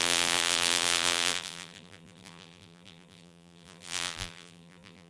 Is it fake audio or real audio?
fake